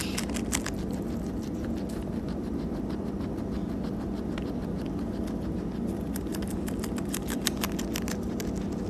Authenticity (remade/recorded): remade